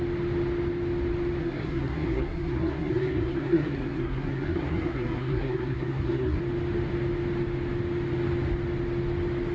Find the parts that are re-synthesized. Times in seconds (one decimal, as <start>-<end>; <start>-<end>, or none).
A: 1.4-6.4